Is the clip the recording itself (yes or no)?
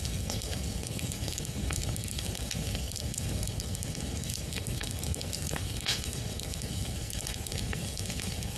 no